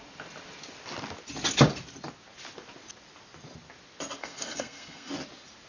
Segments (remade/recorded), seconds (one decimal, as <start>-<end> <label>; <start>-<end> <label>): 0.0-4.2 recorded; 4.2-5.1 remade; 5.1-5.7 recorded